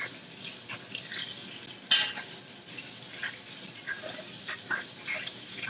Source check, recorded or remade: recorded